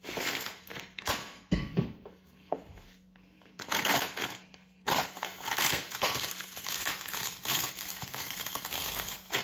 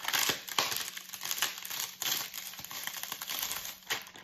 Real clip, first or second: second